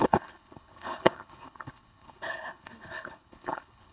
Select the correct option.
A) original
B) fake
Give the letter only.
B